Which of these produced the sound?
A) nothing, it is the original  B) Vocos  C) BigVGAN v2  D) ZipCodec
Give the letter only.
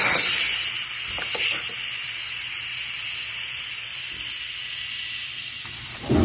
C